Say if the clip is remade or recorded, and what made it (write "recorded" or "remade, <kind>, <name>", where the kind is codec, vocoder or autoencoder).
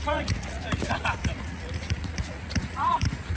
remade, vocoder, Vocos